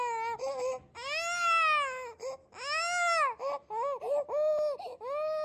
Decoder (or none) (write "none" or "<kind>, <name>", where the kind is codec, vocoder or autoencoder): none